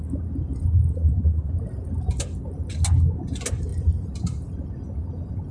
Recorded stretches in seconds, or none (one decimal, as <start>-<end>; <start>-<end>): 0.0-0.9; 1.5-5.5